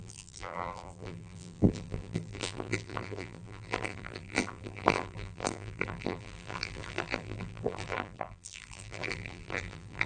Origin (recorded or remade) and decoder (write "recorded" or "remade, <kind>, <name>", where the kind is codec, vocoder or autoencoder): remade, vocoder, BigVGAN v2